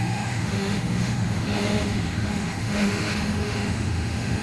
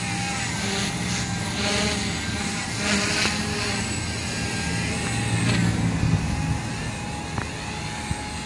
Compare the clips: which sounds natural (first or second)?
second